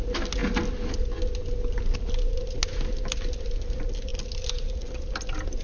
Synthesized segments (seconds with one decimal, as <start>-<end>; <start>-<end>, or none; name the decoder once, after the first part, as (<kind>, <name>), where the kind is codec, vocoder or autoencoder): none